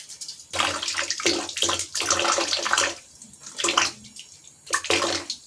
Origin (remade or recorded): recorded